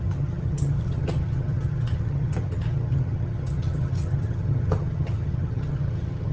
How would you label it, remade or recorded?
remade